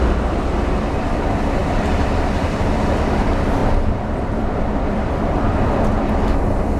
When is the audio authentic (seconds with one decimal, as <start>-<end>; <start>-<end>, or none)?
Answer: 0.0-1.6; 2.7-3.6; 5.8-6.8